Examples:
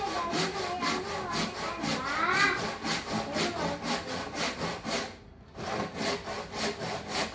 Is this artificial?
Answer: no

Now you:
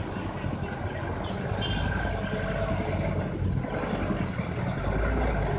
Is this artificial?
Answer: no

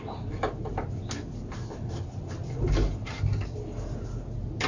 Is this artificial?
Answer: no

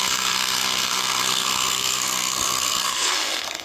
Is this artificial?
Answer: yes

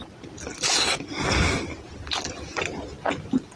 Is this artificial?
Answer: no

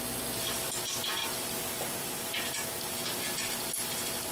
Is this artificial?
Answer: no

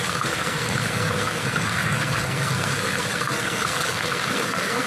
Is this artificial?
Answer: yes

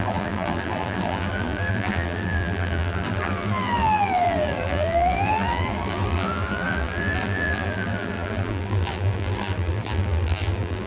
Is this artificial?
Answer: yes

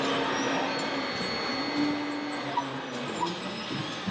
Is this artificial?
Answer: no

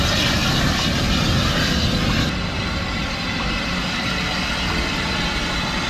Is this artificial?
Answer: no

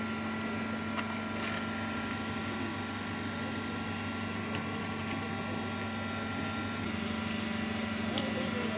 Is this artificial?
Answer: no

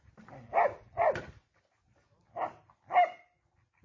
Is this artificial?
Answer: no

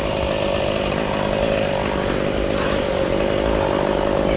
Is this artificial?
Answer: no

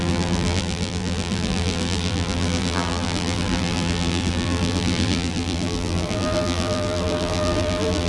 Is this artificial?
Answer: yes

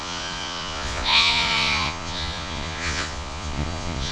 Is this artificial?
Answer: yes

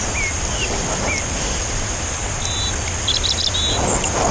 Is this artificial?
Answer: no